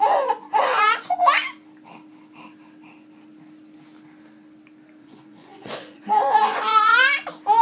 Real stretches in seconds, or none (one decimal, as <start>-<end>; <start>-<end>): 1.2-5.0; 6.9-7.6